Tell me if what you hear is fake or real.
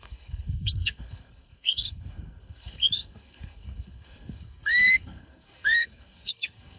fake